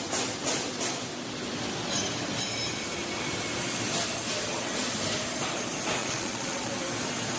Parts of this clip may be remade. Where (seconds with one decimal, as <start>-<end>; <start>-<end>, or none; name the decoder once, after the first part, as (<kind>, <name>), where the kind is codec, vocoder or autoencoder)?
6.0-6.7 (vocoder, Vocos)

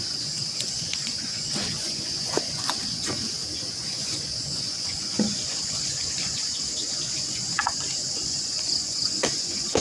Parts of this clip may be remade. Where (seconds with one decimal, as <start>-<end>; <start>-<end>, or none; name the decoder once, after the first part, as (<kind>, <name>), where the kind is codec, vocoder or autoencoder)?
0.0-9.8 (vocoder, Vocos)

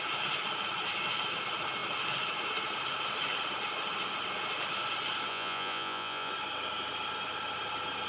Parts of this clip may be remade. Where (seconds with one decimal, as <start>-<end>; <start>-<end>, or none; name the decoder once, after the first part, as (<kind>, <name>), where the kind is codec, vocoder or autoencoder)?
5.3-6.3 (vocoder, Vocos)

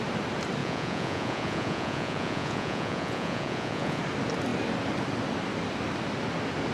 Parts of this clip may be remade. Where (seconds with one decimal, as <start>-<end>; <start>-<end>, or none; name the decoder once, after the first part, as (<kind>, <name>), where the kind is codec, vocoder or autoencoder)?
0.6-4.0 (vocoder, Vocos)

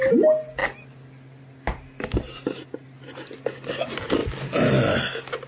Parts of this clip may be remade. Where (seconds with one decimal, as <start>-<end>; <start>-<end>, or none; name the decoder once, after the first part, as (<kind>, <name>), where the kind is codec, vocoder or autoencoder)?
none

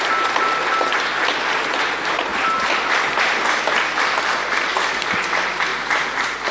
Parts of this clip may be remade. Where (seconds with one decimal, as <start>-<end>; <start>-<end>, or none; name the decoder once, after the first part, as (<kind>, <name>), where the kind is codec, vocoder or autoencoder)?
none

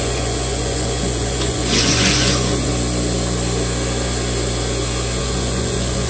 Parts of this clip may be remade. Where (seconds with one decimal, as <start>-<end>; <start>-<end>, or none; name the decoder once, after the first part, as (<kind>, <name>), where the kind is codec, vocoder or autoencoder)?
0.0-2.7 (vocoder, Vocos); 5.2-6.1

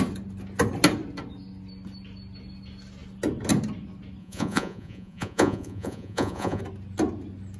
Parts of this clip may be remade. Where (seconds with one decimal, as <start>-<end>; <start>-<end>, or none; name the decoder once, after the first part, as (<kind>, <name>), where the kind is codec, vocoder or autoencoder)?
4.2-6.6 (vocoder, Vocos)